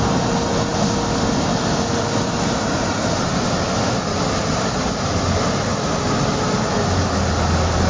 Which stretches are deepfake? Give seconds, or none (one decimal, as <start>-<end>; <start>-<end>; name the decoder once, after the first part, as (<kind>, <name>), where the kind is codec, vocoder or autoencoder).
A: none